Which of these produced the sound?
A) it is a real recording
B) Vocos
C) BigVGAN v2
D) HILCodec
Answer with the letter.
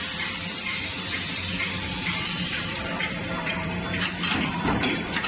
C